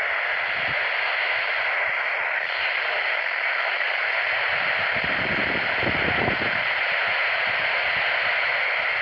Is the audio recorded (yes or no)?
yes